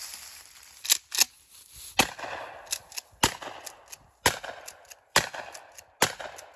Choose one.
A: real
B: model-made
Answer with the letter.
A